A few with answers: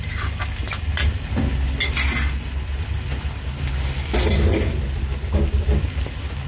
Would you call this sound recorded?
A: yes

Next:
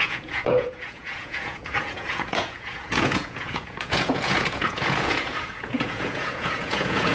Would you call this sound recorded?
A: no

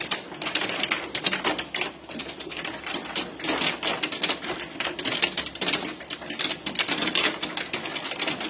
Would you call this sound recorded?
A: yes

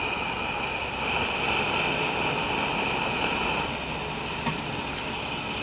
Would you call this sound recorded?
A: yes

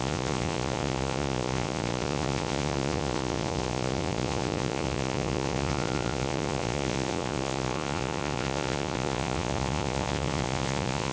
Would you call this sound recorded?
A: no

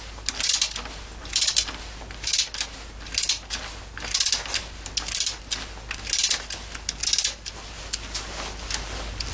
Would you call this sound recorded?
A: yes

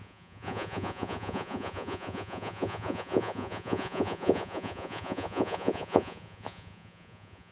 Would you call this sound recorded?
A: no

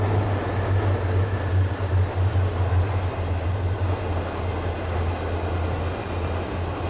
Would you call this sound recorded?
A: yes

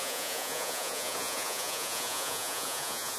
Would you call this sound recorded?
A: no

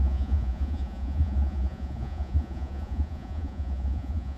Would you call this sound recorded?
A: no